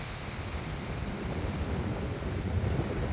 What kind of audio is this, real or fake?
real